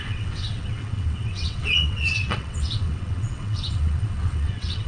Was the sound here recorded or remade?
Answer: remade